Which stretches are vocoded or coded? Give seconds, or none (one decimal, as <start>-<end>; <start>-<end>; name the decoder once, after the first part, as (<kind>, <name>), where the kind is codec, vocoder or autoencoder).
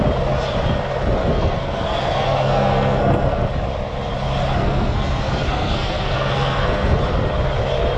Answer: 1.2-3.5 (codec, SNAC); 4.6-7.0